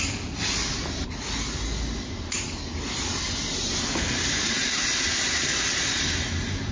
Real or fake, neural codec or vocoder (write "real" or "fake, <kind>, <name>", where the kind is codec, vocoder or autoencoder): real